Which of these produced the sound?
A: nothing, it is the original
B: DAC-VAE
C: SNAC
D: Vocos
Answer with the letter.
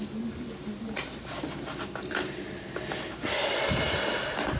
A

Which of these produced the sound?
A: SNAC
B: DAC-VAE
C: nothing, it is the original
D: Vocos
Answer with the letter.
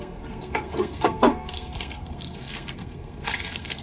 A